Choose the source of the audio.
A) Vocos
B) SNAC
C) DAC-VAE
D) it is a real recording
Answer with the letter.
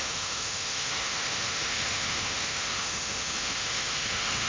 C